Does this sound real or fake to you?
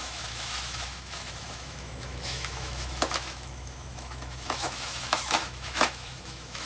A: fake